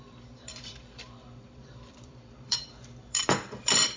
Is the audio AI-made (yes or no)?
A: yes